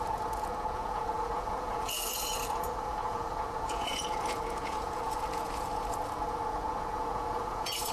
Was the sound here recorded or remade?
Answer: remade